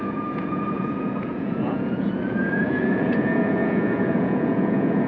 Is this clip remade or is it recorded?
remade